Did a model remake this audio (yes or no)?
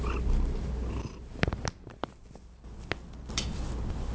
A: no